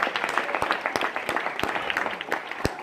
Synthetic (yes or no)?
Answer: no